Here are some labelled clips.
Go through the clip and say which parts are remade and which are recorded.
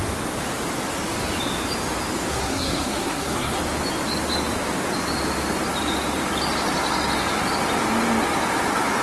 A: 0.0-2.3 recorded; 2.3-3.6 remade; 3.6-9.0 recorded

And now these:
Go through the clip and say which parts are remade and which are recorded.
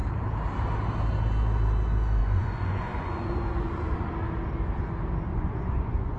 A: 0.0-2.2 recorded; 2.2-4.1 remade; 4.1-5.3 recorded; 5.3-6.2 remade